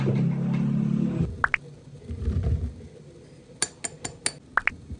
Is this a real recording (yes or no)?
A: yes